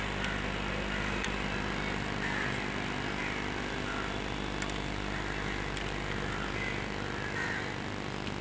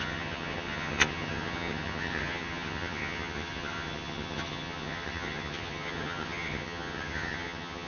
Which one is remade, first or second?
second